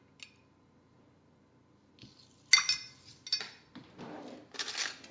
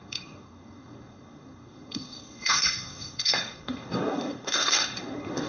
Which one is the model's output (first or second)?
second